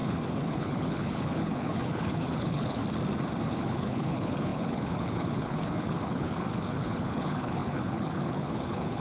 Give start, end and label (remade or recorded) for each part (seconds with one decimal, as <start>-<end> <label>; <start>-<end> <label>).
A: 0.0-2.8 remade; 2.8-3.5 recorded; 3.5-9.0 remade